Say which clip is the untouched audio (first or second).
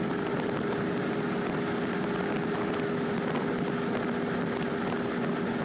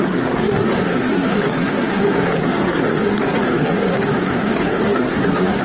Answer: first